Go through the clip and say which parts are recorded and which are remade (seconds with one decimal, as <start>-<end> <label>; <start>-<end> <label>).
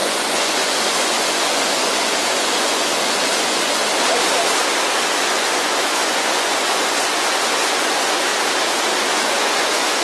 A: 0.0-3.8 remade; 3.8-5.2 recorded; 5.2-8.3 remade; 8.3-9.0 recorded; 9.0-10.0 remade